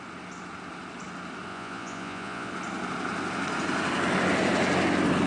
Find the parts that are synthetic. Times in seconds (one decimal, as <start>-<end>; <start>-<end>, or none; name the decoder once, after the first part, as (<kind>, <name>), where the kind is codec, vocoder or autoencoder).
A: 1.5-2.5 (vocoder, Vocos)

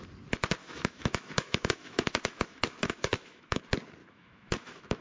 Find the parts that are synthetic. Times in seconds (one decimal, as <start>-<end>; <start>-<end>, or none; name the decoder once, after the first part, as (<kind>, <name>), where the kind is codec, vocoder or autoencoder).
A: 0.6-3.6 (autoencoder, DAC-VAE); 4.0-5.0

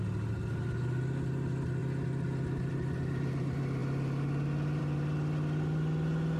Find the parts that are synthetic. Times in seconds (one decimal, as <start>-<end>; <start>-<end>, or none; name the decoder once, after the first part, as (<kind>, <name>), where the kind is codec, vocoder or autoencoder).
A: none

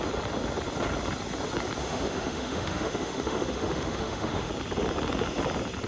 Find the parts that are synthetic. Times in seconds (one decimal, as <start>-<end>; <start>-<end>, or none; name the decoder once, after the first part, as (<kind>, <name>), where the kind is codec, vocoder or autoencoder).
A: 1.8-4.5 (autoencoder, DAC-VAE)

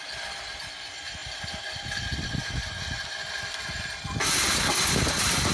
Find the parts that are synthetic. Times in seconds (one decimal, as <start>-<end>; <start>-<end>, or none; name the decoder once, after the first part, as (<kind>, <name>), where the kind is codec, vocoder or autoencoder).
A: none

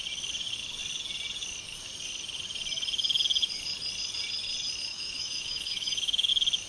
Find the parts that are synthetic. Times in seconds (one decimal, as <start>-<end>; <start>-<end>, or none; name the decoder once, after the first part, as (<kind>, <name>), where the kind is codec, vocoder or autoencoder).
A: 4.9-6.3 (autoencoder, DAC-VAE)